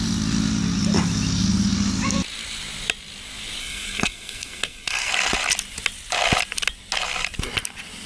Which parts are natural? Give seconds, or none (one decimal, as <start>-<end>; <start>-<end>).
0.0-3.6; 5.1-8.1

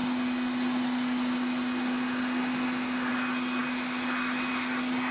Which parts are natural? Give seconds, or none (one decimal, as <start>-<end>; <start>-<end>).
0.0-5.1

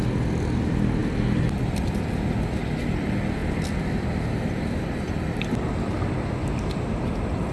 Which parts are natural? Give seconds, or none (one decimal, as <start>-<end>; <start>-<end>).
0.0-7.5

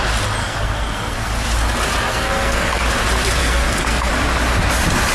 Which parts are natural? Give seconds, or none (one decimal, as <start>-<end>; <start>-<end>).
0.0-0.4; 1.3-2.1; 2.8-3.4; 4.1-5.1

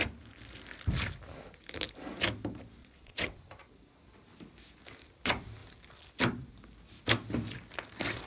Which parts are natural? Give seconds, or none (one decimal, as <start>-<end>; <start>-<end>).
0.0-2.8; 3.4-8.3

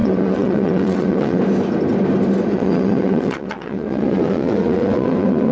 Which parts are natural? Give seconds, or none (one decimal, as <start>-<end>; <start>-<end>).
1.4-2.5

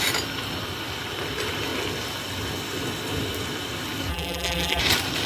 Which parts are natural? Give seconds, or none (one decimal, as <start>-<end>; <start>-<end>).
0.0-4.1; 4.8-5.3

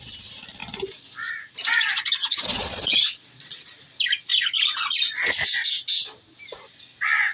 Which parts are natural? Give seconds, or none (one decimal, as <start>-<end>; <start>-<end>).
0.0-2.2; 3.7-7.3